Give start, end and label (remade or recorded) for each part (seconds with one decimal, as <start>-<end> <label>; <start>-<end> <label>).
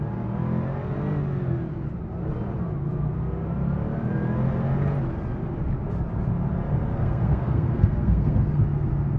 0.0-6.9 recorded; 6.9-8.6 remade; 8.6-9.2 recorded